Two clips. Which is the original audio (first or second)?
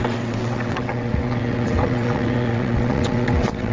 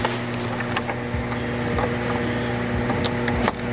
second